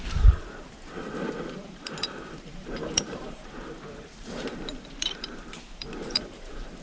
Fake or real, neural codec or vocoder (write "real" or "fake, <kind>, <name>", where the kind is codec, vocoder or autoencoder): fake, vocoder, BigVGAN v2